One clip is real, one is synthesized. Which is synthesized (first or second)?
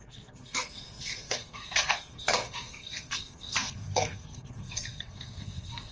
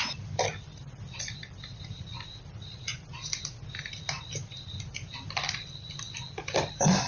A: first